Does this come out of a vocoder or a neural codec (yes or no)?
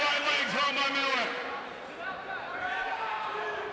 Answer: yes